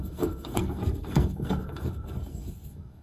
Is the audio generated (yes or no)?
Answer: yes